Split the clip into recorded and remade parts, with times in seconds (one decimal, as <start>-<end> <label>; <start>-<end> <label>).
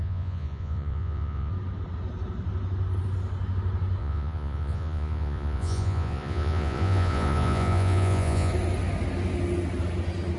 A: 0.0-1.5 remade; 1.5-4.0 recorded; 4.0-8.5 remade; 8.5-10.4 recorded